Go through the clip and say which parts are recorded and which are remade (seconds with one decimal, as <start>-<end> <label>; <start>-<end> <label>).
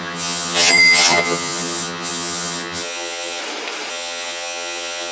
0.0-3.4 remade; 3.4-3.9 recorded; 3.9-5.1 remade